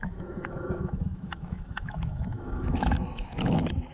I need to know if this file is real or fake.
fake